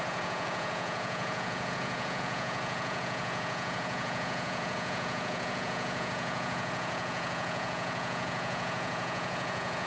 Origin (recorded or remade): remade